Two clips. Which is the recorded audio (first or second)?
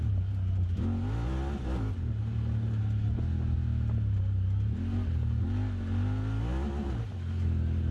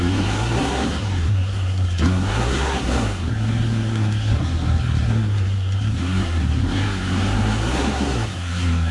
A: first